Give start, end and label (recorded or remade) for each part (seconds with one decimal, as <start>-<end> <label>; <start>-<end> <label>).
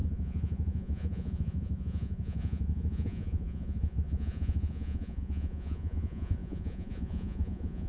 0.0-7.9 remade